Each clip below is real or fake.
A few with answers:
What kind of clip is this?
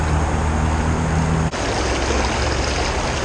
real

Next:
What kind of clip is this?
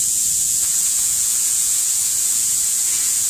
fake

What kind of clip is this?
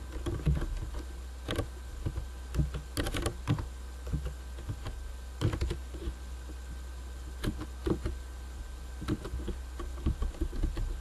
real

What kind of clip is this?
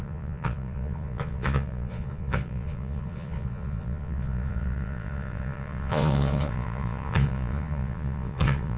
fake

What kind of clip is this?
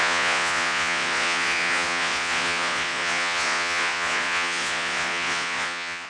fake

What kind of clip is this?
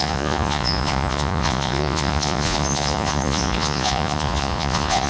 fake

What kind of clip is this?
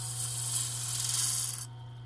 real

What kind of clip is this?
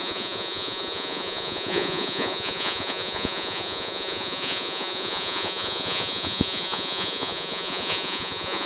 fake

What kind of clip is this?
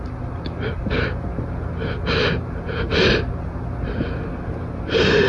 real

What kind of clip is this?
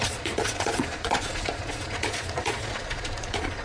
fake